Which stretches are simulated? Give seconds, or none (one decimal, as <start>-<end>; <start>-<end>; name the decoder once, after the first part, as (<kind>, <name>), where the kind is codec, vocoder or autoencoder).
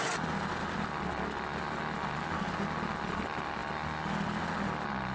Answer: none